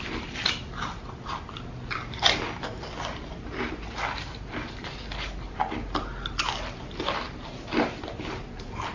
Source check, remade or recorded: recorded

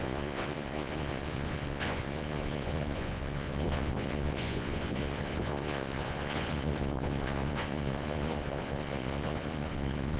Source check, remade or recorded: remade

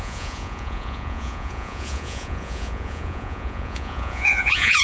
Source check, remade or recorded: remade